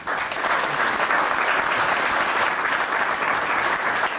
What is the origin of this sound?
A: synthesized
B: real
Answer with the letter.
B